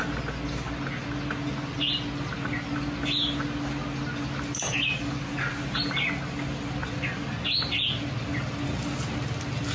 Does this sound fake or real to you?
real